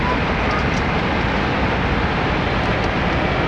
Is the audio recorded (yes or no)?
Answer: yes